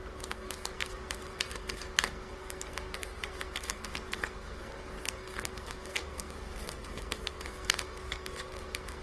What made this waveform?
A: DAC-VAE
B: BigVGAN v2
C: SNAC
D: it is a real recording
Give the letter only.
C